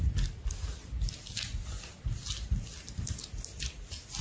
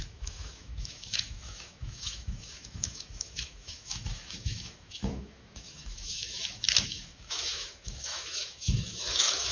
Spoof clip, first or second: second